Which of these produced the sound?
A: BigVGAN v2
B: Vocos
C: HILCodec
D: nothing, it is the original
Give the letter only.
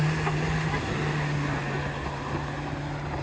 D